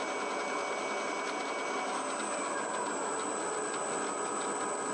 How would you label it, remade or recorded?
recorded